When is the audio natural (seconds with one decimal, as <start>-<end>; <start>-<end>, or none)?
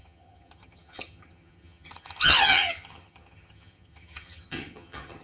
none